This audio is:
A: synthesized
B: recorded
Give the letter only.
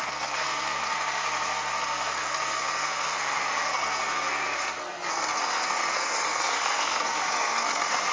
A